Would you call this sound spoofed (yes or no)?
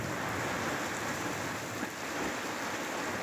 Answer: no